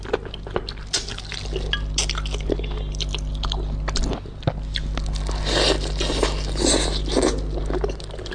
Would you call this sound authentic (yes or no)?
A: yes